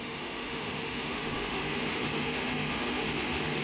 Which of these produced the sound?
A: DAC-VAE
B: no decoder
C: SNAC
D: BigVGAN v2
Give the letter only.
A